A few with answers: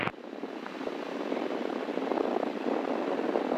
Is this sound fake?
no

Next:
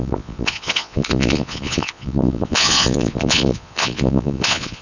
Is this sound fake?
yes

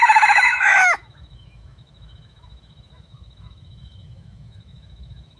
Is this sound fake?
yes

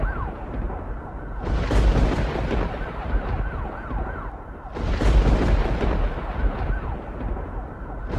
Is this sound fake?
no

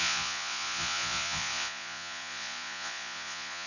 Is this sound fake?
yes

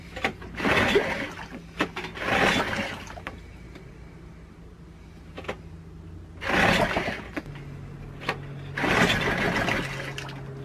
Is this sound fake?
no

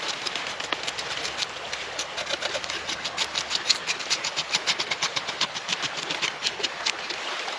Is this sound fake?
no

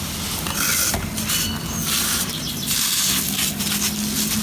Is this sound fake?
no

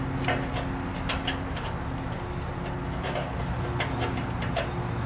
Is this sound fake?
no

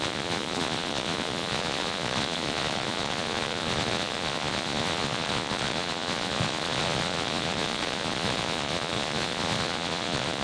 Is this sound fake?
yes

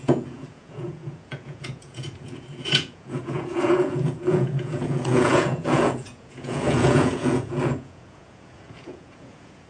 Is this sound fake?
yes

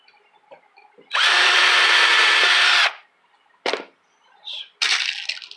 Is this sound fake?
no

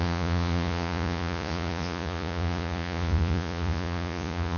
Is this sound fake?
yes